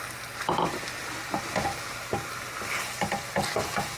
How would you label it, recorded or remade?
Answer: recorded